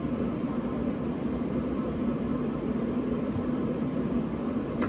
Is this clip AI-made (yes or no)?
yes